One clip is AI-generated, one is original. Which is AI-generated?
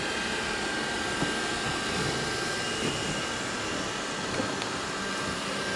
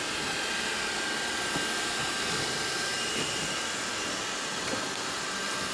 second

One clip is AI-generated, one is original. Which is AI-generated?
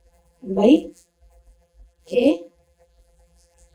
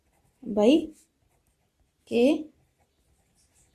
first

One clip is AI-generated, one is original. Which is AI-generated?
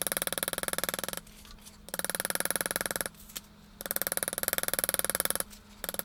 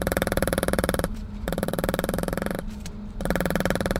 second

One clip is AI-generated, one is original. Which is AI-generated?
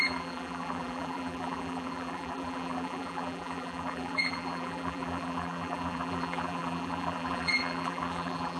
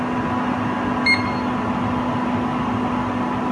first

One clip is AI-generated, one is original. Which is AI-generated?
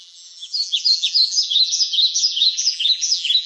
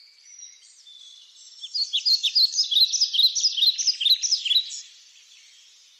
first